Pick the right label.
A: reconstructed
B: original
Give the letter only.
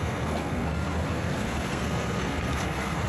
A